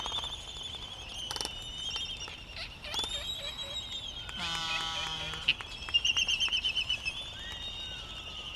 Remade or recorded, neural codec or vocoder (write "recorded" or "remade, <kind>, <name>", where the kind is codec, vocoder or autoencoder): recorded